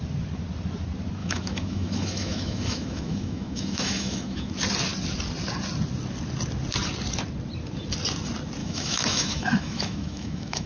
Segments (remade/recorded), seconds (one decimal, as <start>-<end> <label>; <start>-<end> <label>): 0.0-1.2 recorded; 1.2-4.5 remade; 4.5-8.6 recorded; 8.6-10.7 remade